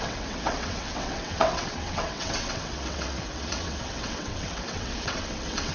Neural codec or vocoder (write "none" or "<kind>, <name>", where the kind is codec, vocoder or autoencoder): vocoder, WaveNeXt